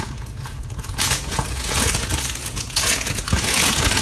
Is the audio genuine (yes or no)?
no